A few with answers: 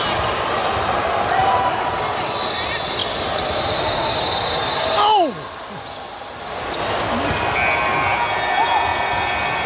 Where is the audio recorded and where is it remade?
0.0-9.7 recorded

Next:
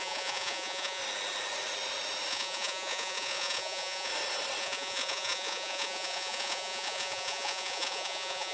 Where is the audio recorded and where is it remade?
0.0-1.0 remade; 1.0-2.3 recorded; 2.3-4.1 remade; 4.1-4.6 recorded; 4.6-8.5 remade

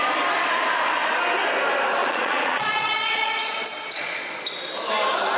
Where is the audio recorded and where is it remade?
0.0-2.0 recorded; 2.0-4.3 remade; 4.3-5.4 recorded

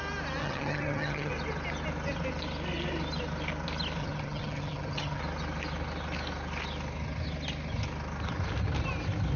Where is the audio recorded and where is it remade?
0.0-0.4 recorded; 0.4-1.3 remade; 1.3-4.0 recorded; 4.0-5.2 remade; 5.2-9.4 recorded

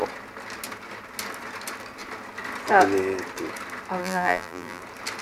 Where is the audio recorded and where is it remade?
0.0-4.0 recorded; 4.0-4.8 remade; 4.8-5.2 recorded

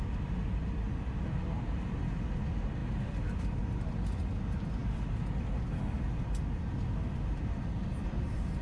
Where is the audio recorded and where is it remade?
0.0-8.6 recorded

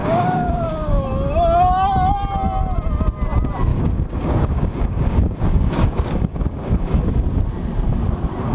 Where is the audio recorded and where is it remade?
0.0-1.0 remade; 1.0-3.7 recorded; 3.7-7.0 remade; 7.0-8.5 recorded